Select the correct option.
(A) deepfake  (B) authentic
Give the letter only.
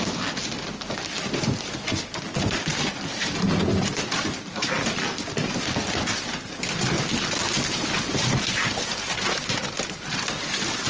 B